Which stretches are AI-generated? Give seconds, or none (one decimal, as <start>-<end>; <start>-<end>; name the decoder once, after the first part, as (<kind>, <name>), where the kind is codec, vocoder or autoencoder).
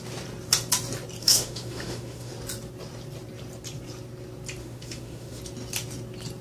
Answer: 1.2-2.3 (autoencoder, DAC-VAE); 4.6-5.4